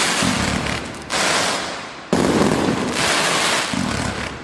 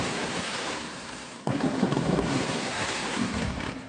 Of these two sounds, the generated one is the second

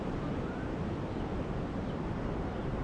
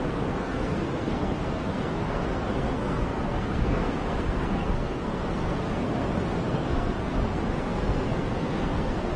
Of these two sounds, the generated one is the second